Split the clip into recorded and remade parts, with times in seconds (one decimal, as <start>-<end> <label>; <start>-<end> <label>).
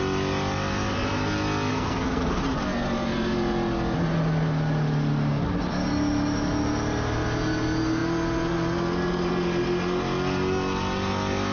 0.0-1.7 recorded; 1.7-2.4 remade; 2.4-11.5 recorded